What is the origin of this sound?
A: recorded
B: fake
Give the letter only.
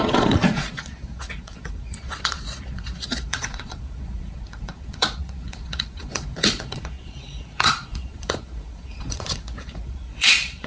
B